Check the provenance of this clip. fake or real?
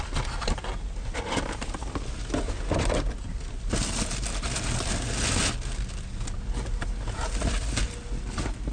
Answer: real